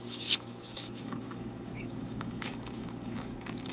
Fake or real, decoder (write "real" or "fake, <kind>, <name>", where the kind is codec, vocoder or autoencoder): fake, codec, DAC